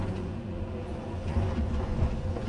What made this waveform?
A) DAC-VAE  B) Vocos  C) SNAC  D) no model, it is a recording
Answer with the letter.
B